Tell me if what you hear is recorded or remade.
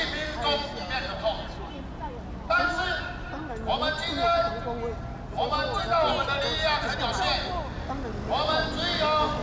recorded